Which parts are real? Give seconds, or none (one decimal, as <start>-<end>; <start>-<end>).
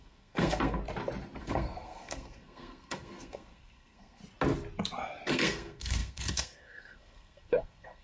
0.8-1.4; 4.2-5.3